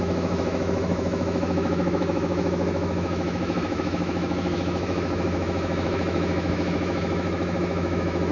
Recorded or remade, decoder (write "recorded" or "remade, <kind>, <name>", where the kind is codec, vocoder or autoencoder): remade, autoencoder, DAC-VAE